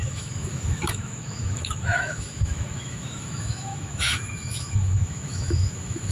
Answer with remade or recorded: remade